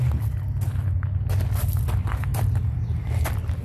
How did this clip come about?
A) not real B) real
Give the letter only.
B